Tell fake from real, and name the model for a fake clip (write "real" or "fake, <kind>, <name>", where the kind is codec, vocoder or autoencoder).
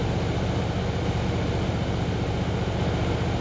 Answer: real